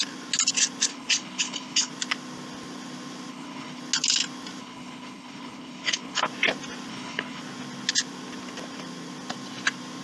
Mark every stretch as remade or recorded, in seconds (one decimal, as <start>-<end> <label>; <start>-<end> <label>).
0.0-0.9 recorded; 0.9-1.9 remade; 1.9-3.3 recorded; 3.3-3.8 remade; 3.8-4.6 recorded; 4.6-6.2 remade; 6.2-6.9 recorded; 6.9-7.4 remade; 7.4-10.0 recorded